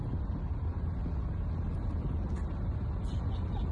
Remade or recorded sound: recorded